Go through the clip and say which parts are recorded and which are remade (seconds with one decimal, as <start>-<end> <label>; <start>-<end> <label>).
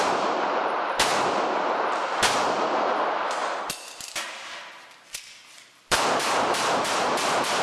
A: 0.0-1.1 remade; 1.1-2.3 recorded; 2.3-7.6 remade